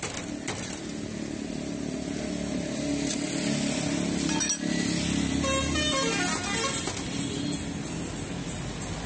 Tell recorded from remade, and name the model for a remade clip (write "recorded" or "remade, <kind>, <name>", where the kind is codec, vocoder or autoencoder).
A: recorded